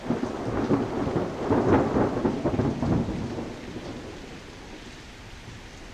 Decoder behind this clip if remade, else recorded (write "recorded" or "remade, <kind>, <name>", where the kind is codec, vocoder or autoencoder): recorded